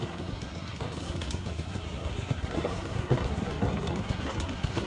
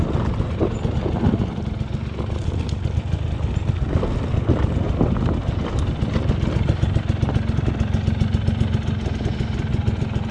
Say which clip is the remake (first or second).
first